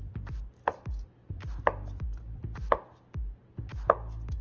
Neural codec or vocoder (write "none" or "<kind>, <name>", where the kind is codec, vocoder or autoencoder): none